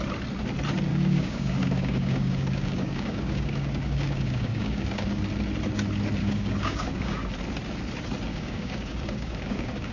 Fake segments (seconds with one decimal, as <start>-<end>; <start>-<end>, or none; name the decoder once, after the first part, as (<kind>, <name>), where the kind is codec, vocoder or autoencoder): 0.9-5.2 (codec, DAC); 6.2-7.3; 8.3-9.9